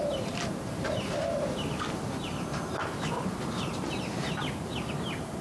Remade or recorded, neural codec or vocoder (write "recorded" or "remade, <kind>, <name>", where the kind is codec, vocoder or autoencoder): remade, vocoder, BigVGAN v2